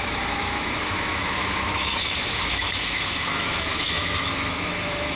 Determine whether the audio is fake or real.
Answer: fake